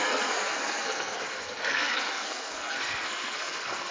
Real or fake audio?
fake